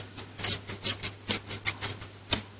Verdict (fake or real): real